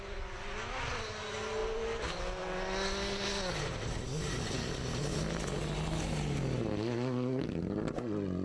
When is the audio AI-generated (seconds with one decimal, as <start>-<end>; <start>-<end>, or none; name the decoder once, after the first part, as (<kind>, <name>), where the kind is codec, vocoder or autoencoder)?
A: none